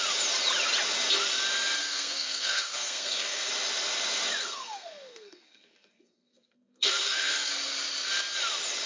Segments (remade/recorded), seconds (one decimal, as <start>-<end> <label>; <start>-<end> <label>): 0.0-1.8 recorded; 1.8-3.5 remade; 3.5-4.4 recorded; 4.4-7.5 remade; 7.5-8.9 recorded